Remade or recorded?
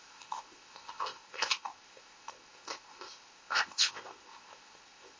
remade